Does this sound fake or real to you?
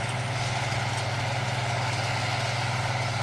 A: real